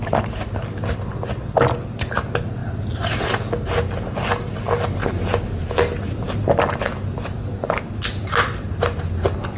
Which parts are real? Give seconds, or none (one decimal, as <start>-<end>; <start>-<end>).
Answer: 0.0-9.6